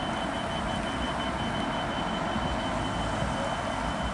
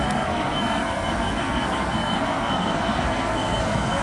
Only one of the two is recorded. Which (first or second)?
first